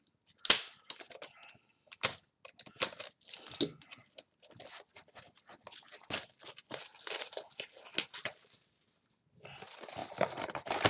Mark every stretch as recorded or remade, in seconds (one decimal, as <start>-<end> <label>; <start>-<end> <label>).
0.0-10.0 recorded; 10.0-10.9 remade